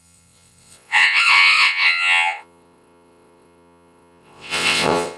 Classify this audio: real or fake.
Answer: fake